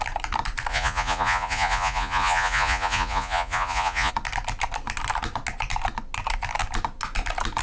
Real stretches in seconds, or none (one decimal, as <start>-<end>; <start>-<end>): 0.0-0.7; 4.1-7.6